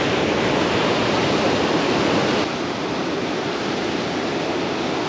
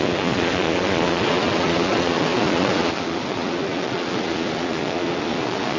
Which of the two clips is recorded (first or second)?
first